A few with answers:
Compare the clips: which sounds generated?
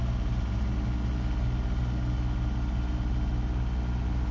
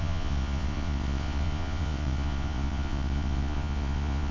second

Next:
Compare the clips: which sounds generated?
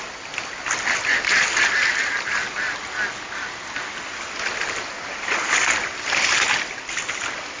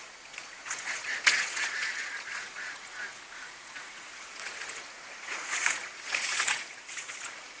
second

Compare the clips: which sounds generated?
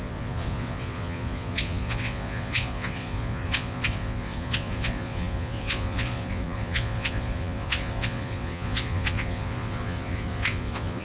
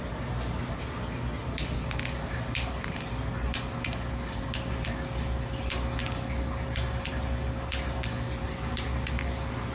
first